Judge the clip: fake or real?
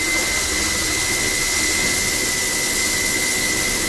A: real